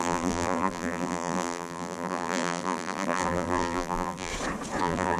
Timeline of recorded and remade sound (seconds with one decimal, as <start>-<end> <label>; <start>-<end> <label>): 0.0-4.3 remade; 4.3-4.8 recorded; 4.8-5.2 remade